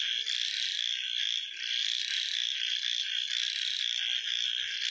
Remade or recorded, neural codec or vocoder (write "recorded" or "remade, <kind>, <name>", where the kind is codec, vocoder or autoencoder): recorded